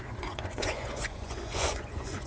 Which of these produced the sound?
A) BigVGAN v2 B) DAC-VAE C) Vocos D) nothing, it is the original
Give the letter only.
C